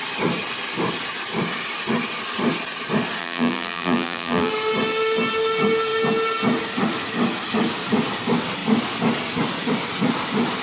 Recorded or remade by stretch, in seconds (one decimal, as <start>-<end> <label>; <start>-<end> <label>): 0.0-3.2 recorded; 3.2-4.5 remade; 4.5-10.6 recorded